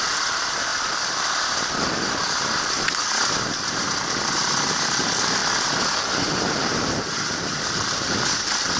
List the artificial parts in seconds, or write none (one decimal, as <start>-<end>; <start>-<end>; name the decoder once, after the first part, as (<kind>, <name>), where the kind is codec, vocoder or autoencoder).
none